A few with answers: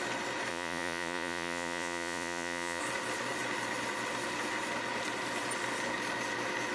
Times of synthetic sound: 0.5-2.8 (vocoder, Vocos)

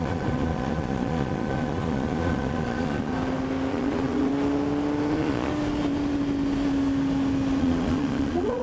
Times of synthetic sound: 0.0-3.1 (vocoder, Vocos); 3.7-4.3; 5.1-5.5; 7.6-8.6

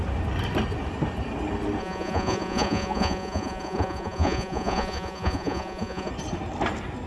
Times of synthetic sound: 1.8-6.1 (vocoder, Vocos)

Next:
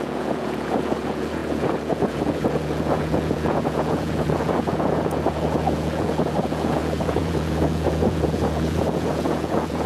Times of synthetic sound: 0.0-9.9 (vocoder, Vocos)